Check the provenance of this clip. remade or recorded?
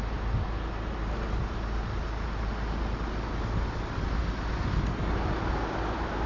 recorded